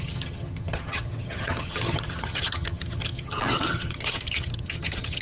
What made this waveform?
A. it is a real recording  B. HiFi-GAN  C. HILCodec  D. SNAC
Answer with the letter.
B